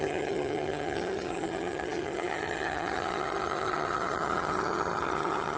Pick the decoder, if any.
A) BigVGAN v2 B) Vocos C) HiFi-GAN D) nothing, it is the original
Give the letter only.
C